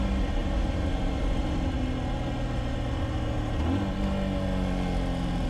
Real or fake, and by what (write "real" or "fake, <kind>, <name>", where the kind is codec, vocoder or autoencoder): real